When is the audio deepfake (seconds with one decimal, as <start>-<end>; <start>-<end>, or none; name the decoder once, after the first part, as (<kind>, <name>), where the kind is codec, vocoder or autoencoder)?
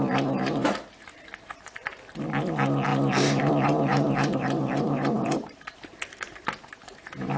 0.6-2.0 (vocoder, BigVGAN v2); 3.9-7.4